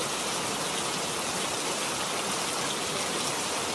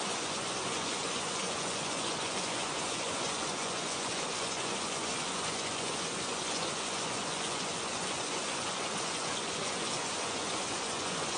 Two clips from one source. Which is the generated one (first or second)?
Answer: second